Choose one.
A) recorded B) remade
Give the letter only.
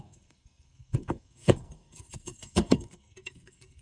B